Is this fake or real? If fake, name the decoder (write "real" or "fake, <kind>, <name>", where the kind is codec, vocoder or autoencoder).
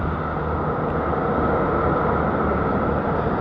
real